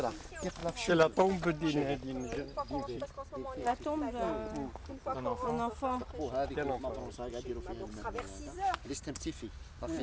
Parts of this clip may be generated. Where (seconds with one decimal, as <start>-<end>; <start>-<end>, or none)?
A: none